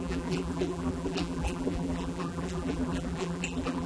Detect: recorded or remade remade